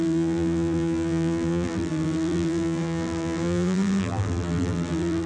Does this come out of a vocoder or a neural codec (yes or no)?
yes